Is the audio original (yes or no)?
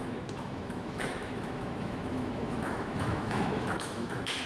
no